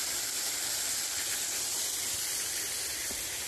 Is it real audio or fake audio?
real